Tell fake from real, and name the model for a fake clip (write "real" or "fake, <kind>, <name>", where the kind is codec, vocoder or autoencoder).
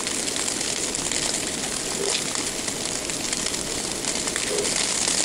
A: real